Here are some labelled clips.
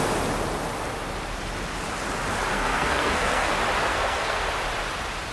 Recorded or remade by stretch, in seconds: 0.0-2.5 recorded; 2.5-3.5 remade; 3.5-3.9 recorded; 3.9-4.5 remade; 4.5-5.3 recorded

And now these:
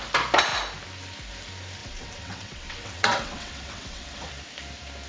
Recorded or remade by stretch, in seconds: 0.0-1.8 recorded; 1.8-4.3 remade; 4.3-5.1 recorded

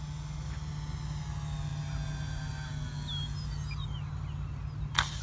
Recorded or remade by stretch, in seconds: 0.0-5.2 recorded